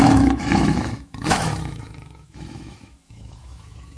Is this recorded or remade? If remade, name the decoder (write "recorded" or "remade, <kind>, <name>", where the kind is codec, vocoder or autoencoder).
remade, autoencoder, DAC-VAE